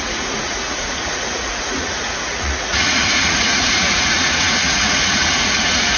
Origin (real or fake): fake